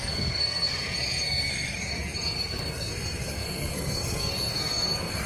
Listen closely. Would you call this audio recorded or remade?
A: remade